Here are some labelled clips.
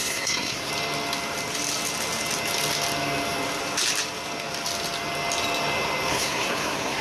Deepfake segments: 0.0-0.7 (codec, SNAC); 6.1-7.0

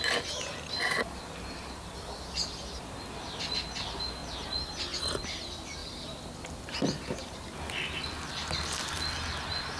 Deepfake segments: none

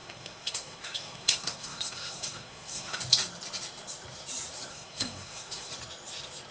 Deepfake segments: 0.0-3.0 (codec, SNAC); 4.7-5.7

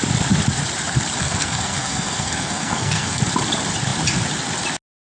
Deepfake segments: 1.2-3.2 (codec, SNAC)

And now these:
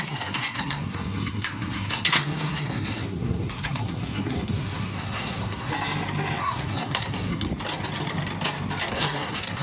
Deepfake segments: 0.0-5.7 (codec, SNAC); 6.4-7.5; 8.9-9.6

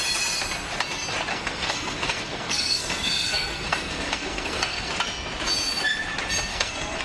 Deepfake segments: 1.3-4.9 (codec, SNAC); 6.5-7.0

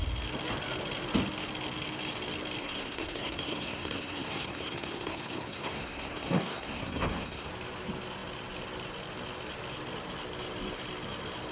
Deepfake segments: 2.6-7.5 (codec, SNAC)